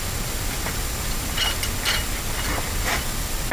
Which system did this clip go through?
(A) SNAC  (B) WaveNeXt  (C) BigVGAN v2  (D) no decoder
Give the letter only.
D